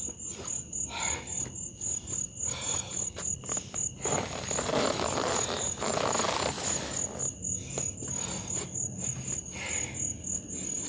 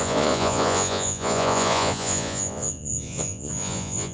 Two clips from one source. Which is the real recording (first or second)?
first